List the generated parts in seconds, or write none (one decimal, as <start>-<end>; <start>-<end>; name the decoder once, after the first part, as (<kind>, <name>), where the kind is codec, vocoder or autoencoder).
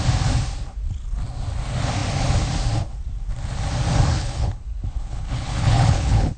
4.1-6.4 (codec, HILCodec)